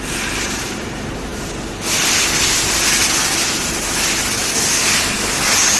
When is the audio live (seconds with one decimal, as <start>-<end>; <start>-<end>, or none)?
0.0-5.8